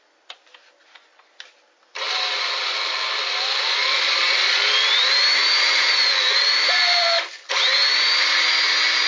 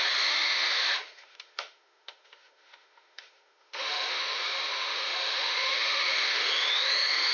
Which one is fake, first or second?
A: second